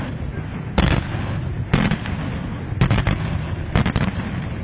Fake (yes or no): no